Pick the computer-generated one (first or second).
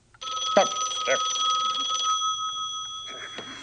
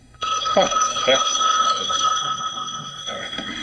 second